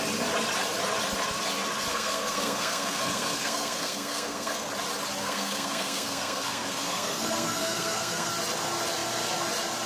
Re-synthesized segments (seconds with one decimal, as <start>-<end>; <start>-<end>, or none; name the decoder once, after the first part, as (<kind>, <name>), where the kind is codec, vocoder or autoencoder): 1.9-4.7 (codec, SNAC); 5.2-8.3